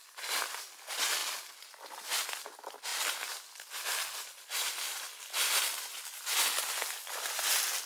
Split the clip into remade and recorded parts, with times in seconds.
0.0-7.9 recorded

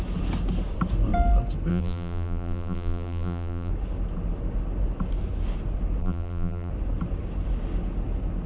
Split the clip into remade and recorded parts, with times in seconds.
0.0-1.7 recorded; 1.7-3.7 remade; 3.7-6.0 recorded; 6.0-6.7 remade; 6.7-8.5 recorded

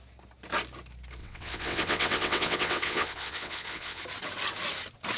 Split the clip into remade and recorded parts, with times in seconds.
0.0-1.2 recorded; 1.2-4.0 remade; 4.0-5.2 recorded

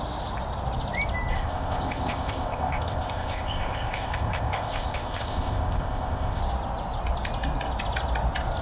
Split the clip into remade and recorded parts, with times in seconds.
0.0-1.3 recorded; 1.3-6.4 remade; 6.4-8.6 recorded

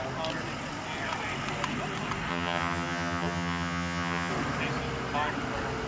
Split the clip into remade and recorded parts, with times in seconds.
0.0-2.3 recorded; 2.3-4.3 remade; 4.3-5.9 recorded

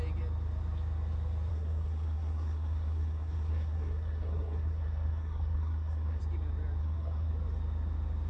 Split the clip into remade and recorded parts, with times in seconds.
0.0-1.5 recorded; 1.5-6.2 remade; 6.2-6.8 recorded; 6.8-7.3 remade; 7.3-8.3 recorded